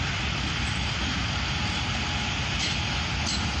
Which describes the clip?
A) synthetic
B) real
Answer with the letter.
B